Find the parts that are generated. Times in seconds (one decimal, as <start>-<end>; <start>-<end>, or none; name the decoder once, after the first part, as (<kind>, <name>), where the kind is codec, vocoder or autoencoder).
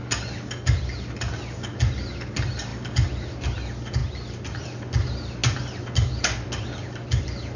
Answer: none